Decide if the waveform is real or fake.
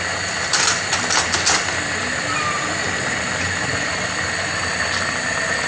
real